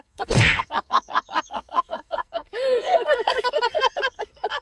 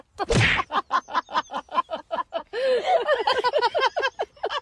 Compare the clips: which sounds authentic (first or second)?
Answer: second